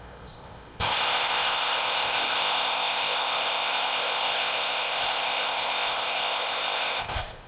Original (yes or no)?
no